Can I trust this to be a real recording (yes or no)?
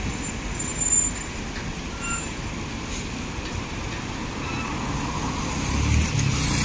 yes